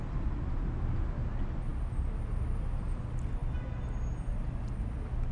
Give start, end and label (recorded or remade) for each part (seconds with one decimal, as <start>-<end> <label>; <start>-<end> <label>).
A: 0.0-5.3 recorded